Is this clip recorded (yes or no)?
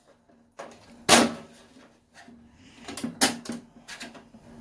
yes